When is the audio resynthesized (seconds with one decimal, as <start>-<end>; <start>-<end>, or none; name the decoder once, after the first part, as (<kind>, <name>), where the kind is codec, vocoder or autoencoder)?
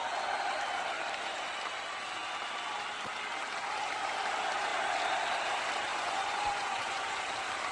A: 5.9-7.2 (vocoder, Vocos)